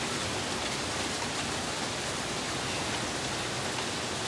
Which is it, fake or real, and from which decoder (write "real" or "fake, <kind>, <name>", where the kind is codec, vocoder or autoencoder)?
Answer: real